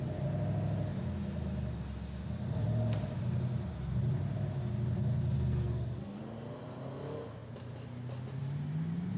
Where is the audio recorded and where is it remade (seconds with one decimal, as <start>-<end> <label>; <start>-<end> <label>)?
0.0-5.5 recorded; 5.5-6.2 remade; 6.2-9.2 recorded